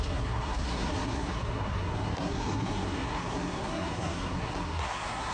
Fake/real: fake